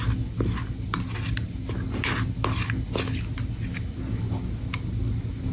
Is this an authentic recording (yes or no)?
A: yes